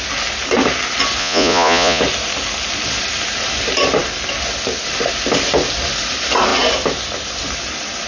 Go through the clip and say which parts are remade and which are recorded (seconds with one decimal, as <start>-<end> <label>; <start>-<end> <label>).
0.0-1.2 recorded; 1.2-2.0 remade; 2.0-8.1 recorded